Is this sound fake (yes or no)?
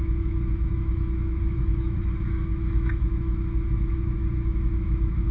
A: yes